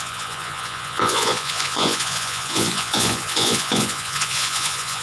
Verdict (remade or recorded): remade